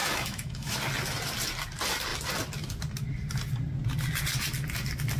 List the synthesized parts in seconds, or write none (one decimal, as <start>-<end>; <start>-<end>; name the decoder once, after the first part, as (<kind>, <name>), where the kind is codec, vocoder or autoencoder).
0.0-0.8 (autoencoder, DAC-VAE)